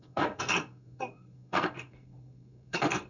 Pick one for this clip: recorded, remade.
remade